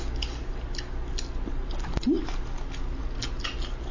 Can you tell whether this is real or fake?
real